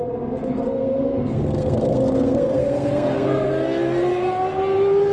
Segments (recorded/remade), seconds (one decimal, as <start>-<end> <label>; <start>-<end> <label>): 0.0-0.4 recorded; 0.4-3.5 remade; 3.5-5.1 recorded